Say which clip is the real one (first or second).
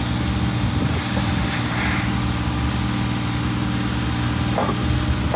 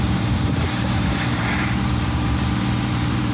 first